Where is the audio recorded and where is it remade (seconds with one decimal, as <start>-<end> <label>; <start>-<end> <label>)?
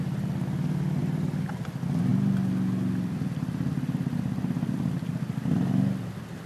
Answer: 0.0-6.5 recorded